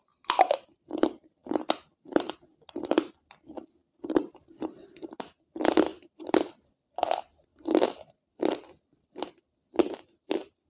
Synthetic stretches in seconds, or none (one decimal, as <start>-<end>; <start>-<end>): 1.4-2.3; 5.9-6.7; 7.5-9.4